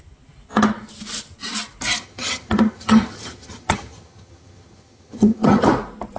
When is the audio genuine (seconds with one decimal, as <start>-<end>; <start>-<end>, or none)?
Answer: 0.0-2.0; 5.7-6.2

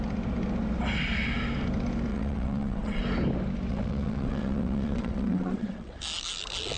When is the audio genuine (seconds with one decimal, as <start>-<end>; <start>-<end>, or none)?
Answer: 0.0-2.1; 3.0-3.7; 6.0-6.8